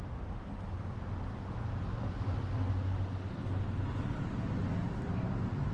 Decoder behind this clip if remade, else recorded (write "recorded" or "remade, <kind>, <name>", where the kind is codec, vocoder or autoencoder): recorded